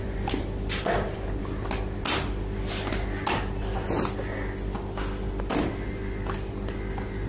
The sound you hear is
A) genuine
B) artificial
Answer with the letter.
A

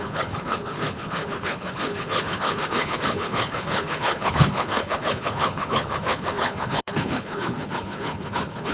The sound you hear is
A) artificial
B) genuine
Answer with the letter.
A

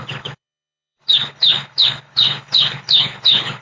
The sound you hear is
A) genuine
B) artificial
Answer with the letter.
B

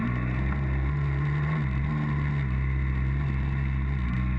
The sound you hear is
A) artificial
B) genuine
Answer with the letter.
B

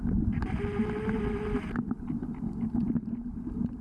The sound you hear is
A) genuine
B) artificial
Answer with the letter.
A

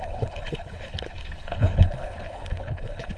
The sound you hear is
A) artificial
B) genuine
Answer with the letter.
A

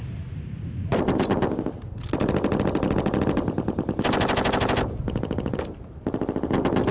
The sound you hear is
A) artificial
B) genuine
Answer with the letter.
B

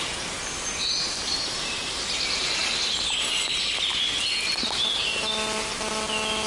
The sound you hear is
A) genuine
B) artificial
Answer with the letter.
A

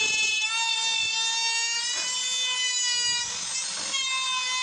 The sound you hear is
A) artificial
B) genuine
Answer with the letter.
B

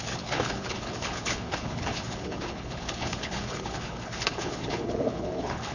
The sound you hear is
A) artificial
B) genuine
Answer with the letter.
A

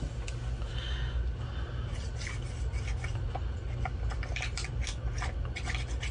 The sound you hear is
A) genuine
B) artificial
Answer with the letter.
A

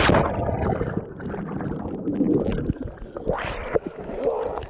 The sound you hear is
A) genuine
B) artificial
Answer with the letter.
A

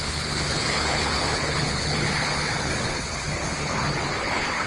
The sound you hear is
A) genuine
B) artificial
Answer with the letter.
B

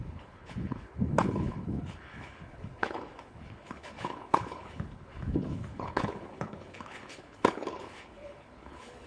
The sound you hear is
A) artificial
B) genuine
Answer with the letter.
A